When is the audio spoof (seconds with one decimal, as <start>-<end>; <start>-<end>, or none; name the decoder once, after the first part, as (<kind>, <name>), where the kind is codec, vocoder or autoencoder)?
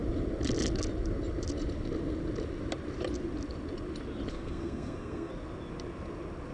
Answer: 4.3-5.3 (codec, SNAC)